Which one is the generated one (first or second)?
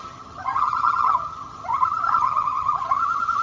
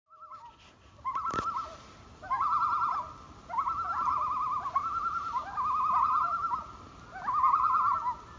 first